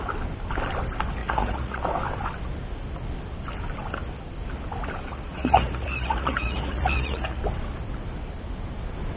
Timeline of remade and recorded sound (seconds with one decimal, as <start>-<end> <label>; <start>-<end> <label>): 0.0-1.2 recorded; 1.2-1.8 remade; 1.8-5.1 recorded; 5.1-7.4 remade; 7.4-9.2 recorded

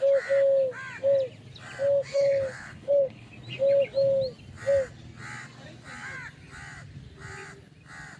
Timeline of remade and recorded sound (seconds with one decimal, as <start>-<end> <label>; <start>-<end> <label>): 0.0-2.1 recorded; 2.1-3.3 remade; 3.3-8.2 recorded